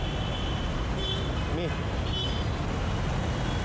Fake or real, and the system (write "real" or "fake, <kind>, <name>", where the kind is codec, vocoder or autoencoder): real